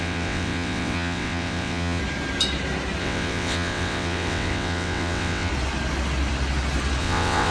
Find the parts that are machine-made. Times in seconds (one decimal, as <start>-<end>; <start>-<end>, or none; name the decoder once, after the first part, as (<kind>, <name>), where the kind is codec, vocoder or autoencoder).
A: 0.0-2.0 (vocoder, WaveNeXt); 3.0-5.5; 7.0-7.5